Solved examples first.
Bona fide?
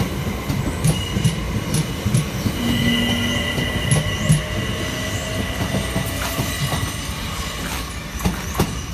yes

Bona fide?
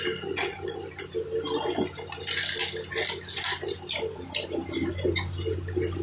no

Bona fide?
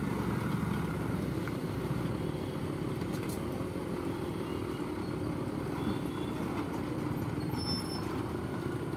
yes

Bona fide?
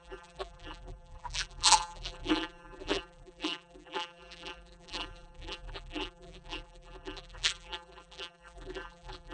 no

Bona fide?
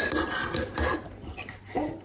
yes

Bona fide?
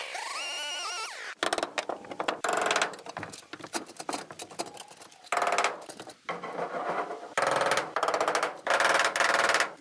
yes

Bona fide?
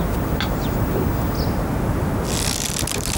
yes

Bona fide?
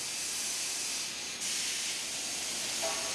yes